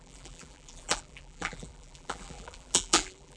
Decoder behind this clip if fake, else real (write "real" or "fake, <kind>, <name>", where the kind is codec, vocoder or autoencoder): fake, vocoder, BigVGAN v2